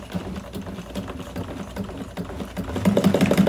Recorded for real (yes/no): yes